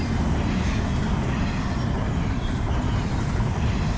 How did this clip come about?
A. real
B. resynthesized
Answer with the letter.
B